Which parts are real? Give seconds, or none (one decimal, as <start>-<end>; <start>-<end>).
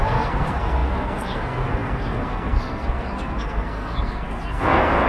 none